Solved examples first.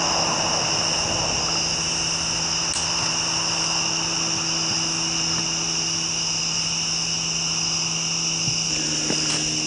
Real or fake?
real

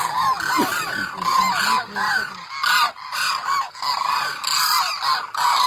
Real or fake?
real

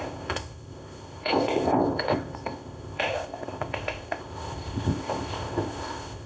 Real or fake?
fake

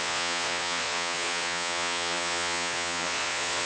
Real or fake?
fake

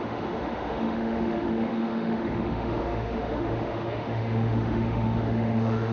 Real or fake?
fake